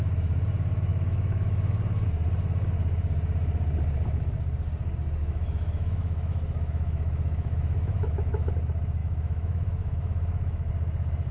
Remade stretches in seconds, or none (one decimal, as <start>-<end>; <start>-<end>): 0.9-1.7; 5.2-8.5; 9.0-10.7